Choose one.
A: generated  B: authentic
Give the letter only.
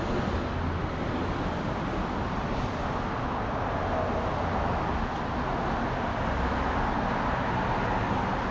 B